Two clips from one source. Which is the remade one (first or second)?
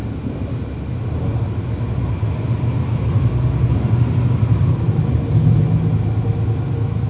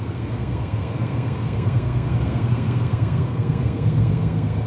second